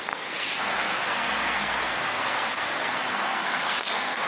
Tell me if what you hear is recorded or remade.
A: remade